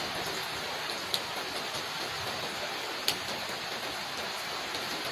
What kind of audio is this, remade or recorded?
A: recorded